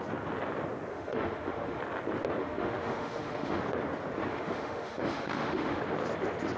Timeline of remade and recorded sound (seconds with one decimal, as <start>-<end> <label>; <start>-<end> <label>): 0.0-0.9 recorded; 0.9-1.8 remade; 1.8-2.4 recorded; 2.4-3.6 remade; 3.6-4.3 recorded; 4.3-5.8 remade; 5.8-6.6 recorded